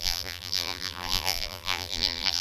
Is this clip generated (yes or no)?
yes